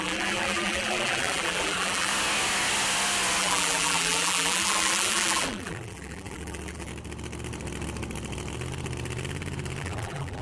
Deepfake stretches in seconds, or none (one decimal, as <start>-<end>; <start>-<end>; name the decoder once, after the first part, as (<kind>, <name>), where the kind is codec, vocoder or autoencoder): 0.0-2.1 (vocoder, BigVGAN v2); 3.4-6.9; 9.8-10.4